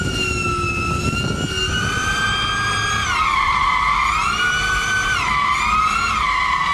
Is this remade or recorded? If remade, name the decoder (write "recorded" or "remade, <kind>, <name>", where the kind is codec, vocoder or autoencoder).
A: recorded